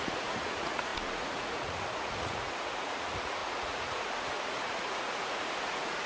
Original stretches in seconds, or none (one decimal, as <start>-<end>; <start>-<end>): none